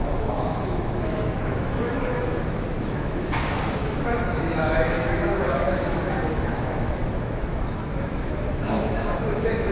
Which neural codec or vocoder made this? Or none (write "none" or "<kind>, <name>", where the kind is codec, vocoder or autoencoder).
autoencoder, DAC-VAE